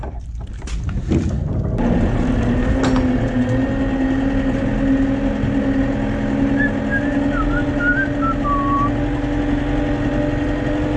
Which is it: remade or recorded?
recorded